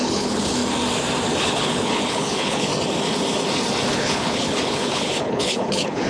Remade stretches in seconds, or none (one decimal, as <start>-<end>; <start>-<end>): 0.0-0.6; 1.4-2.7; 3.9-6.1

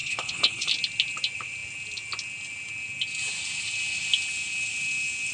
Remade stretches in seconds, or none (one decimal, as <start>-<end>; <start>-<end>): 0.0-0.7

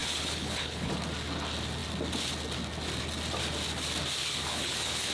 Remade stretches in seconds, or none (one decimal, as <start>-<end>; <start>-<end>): 0.0-0.9; 4.2-5.1

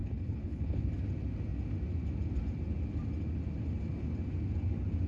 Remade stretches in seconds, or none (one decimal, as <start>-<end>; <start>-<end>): 0.0-0.8